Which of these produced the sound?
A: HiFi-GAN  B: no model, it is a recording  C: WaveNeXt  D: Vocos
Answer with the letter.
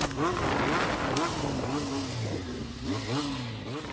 B